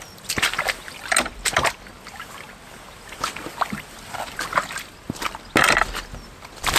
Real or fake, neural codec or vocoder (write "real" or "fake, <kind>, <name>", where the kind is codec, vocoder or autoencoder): real